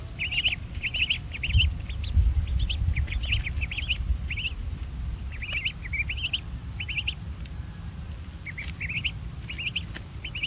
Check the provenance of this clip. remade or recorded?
recorded